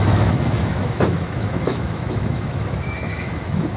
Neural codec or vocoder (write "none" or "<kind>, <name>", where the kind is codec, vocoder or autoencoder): autoencoder, DAC-VAE